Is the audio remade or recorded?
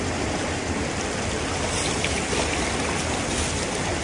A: recorded